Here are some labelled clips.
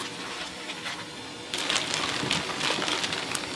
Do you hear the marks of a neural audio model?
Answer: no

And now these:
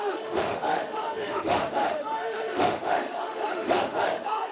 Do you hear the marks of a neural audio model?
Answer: yes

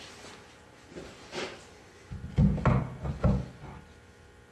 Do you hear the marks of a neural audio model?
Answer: no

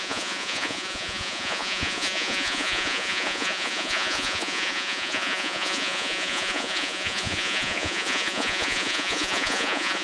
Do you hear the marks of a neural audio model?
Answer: yes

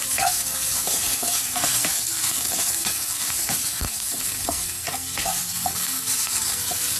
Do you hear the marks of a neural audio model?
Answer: yes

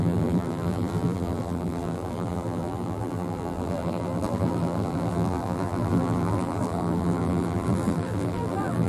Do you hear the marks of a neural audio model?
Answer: yes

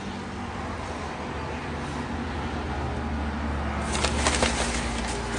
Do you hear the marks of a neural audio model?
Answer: no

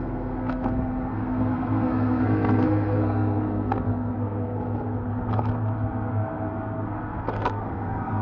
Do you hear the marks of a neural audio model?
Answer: yes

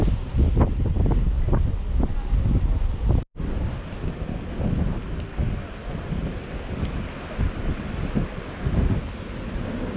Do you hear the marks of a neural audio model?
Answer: no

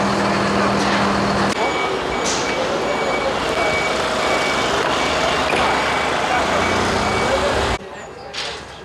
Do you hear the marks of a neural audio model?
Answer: no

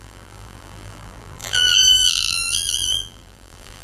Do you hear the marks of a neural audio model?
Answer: yes